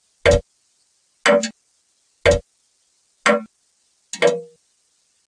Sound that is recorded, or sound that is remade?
recorded